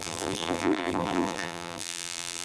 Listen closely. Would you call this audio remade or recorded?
remade